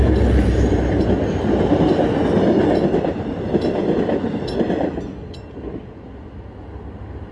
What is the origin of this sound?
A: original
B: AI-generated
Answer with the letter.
A